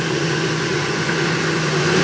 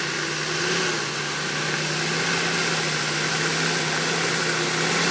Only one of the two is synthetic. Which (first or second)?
first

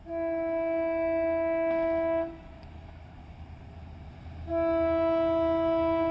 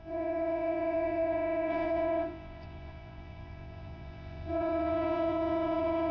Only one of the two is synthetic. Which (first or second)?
second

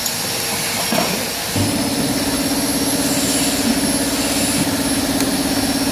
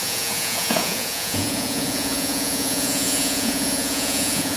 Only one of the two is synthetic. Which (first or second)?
second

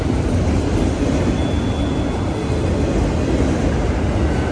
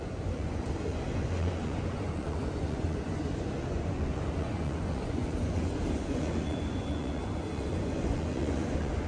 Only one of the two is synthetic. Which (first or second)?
second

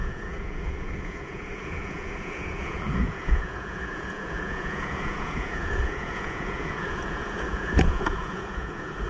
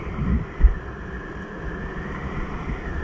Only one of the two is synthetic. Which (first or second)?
first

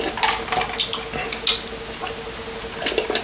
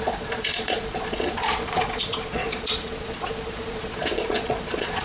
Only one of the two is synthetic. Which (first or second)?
second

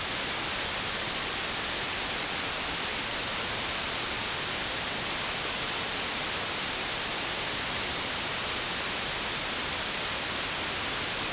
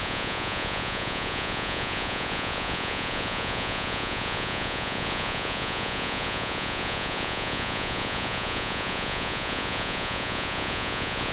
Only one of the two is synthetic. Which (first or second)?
second